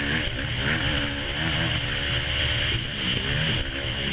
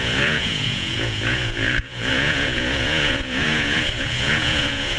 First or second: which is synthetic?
second